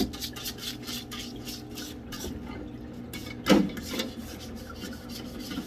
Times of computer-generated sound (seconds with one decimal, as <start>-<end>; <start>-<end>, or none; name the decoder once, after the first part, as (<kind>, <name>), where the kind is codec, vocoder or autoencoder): none